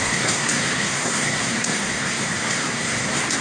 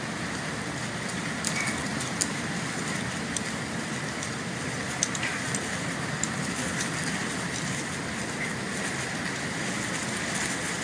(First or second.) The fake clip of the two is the first